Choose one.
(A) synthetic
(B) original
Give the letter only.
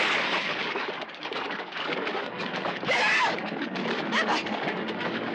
A